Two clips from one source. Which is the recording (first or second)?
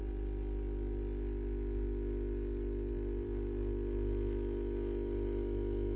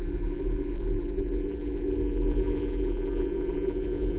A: first